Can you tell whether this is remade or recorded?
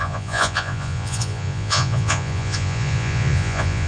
remade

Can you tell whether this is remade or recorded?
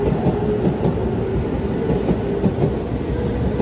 recorded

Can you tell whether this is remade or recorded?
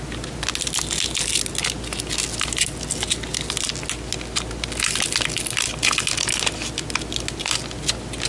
recorded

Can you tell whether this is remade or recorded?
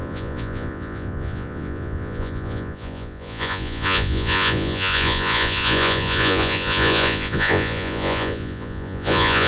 remade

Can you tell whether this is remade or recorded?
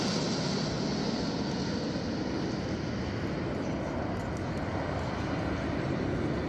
recorded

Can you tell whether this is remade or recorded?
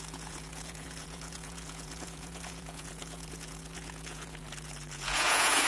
remade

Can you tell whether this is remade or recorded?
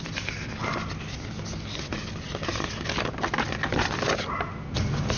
recorded